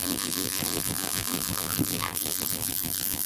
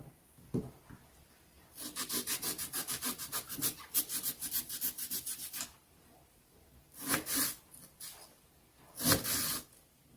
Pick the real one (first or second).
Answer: second